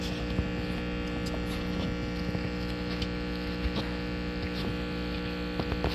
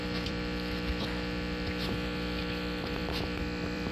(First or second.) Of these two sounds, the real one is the first